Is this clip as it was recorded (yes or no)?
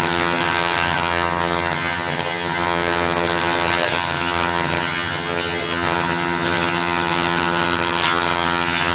no